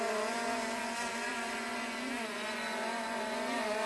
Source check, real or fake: fake